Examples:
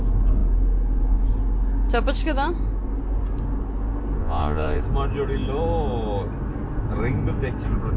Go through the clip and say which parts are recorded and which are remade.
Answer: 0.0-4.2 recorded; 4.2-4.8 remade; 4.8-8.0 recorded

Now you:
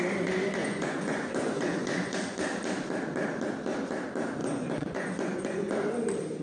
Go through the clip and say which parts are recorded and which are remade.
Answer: 0.0-0.6 recorded; 0.6-2.2 remade; 2.2-4.4 recorded; 4.4-5.9 remade; 5.9-6.4 recorded